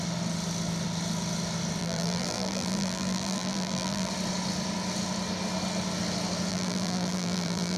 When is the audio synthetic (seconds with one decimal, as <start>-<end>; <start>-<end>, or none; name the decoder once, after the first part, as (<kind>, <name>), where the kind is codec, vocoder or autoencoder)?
1.8-4.1 (vocoder, BigVGAN v2); 6.5-7.8